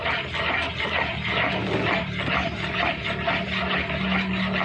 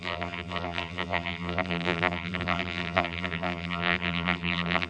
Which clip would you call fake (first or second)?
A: second